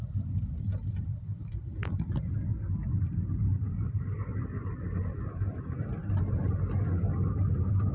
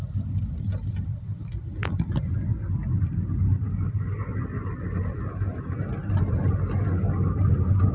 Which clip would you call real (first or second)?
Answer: second